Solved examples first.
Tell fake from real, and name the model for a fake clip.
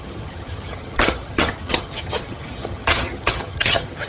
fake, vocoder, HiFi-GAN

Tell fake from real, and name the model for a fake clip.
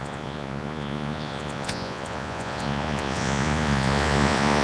fake, vocoder, Vocos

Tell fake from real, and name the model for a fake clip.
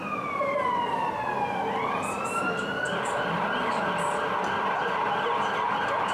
real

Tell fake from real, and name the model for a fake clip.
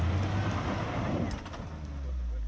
real